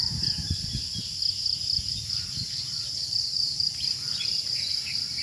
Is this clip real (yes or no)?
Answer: no